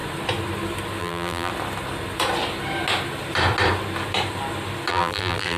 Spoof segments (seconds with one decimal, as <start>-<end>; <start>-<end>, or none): 1.0-1.5; 4.9-5.6